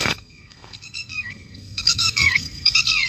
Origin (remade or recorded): remade